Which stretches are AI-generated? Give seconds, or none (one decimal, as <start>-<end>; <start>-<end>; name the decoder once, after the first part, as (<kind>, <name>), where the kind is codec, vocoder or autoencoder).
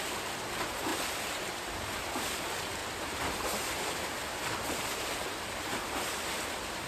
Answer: none